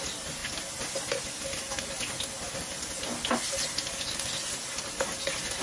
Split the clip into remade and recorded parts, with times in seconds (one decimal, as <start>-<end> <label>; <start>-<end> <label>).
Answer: 0.0-5.6 recorded